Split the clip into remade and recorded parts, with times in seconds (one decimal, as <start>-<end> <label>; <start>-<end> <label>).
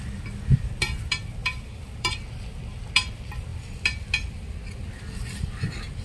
0.0-1.4 recorded; 1.4-2.1 remade; 2.1-6.0 recorded